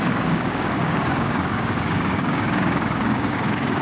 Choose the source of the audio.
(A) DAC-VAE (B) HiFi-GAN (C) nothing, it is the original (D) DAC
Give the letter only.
D